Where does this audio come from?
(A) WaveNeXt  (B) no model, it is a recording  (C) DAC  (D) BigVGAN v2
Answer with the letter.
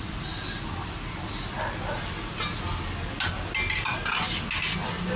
B